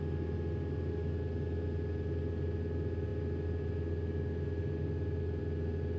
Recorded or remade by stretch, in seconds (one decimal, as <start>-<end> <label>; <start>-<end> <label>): 0.0-6.0 recorded

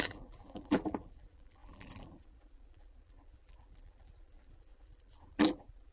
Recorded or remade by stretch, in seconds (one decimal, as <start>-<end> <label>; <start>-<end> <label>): 0.0-5.9 remade

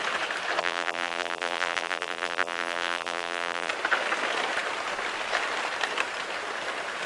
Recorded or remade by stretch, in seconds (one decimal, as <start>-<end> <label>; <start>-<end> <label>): 0.0-0.6 recorded; 0.6-3.7 remade; 3.7-7.1 recorded

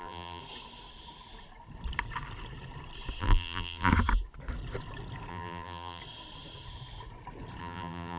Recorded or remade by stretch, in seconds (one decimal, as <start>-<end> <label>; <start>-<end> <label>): 0.0-0.4 remade; 0.4-3.2 recorded; 3.2-3.9 remade; 3.9-5.3 recorded; 5.3-6.0 remade; 6.0-7.6 recorded; 7.6-8.2 remade

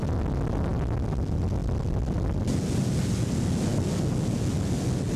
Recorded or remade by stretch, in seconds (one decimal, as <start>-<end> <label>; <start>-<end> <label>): 0.0-5.2 recorded